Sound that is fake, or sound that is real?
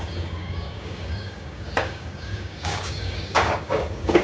fake